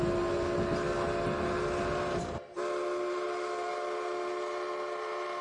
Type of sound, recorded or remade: recorded